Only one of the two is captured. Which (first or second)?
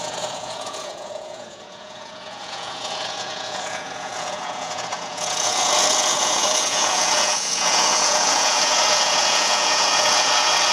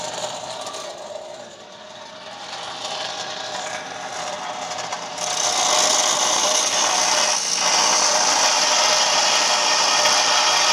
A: second